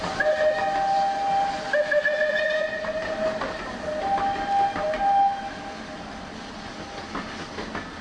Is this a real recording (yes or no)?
yes